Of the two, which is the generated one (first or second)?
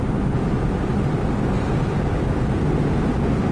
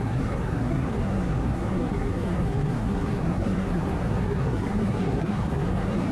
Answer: second